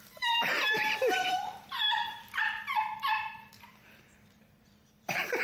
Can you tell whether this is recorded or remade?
remade